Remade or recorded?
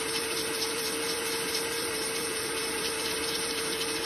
remade